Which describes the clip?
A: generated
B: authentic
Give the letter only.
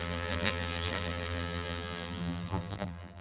A